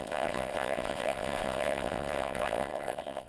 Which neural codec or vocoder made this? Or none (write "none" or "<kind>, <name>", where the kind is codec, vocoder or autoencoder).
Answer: vocoder, WaveNeXt